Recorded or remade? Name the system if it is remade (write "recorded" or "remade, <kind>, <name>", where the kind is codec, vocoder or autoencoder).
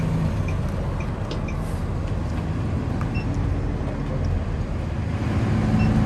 recorded